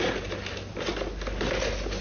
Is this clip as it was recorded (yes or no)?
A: yes